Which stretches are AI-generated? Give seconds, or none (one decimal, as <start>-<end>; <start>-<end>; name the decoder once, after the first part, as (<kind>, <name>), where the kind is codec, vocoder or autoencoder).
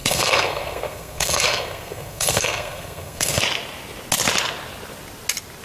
0.0-3.4 (codec, SNAC)